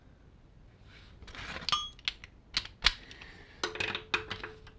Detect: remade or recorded recorded